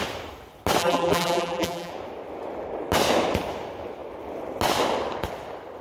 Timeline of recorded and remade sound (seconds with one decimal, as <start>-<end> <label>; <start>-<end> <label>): 0.0-0.8 recorded; 0.8-1.9 remade; 1.9-5.8 recorded